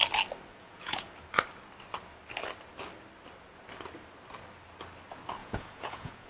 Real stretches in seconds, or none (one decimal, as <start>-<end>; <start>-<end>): 0.0-0.5; 1.1-5.4

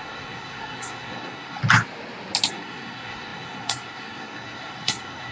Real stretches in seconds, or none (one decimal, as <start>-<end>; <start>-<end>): 1.6-2.5

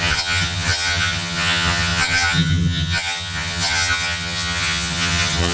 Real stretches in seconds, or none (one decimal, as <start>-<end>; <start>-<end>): none

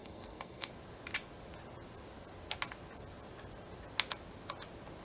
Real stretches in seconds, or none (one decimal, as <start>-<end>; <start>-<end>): 0.7-5.0

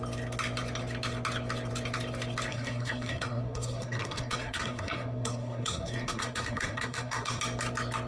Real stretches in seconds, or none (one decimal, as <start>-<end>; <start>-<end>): 0.0-2.5; 7.4-8.1

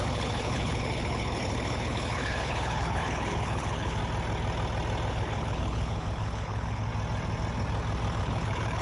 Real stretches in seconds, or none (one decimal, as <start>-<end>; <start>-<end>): 4.0-5.1; 6.9-8.2

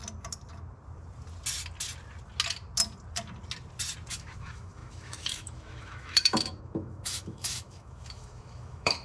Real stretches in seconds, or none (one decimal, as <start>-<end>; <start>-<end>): 0.0-4.1